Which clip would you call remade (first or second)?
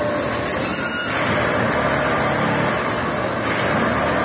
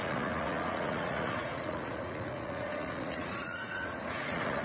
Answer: second